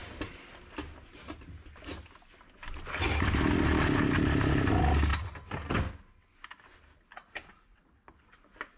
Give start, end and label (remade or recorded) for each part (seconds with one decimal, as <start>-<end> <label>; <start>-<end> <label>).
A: 0.0-5.1 recorded; 5.1-5.9 remade; 5.9-8.8 recorded